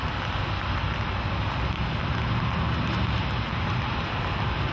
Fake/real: real